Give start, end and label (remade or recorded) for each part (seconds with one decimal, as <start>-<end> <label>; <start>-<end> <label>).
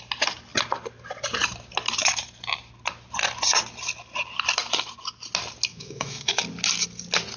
0.0-5.7 recorded; 5.7-6.4 remade; 6.4-7.4 recorded